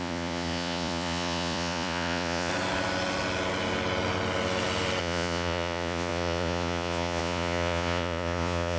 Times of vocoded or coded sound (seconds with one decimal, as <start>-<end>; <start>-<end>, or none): 0.0-2.5; 5.0-8.8